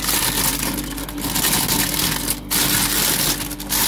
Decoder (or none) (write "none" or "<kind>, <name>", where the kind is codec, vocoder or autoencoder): none